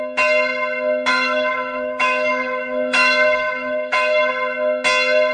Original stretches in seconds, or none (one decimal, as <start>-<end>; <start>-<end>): 0.0-1.1; 4.3-5.3